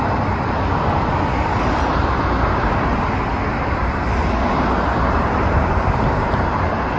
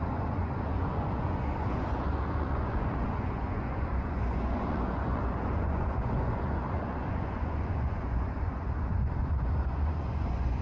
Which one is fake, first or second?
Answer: second